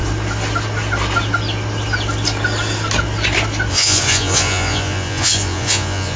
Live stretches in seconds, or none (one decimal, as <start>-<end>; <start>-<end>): 0.0-3.7